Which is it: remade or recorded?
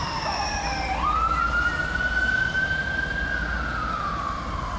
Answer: recorded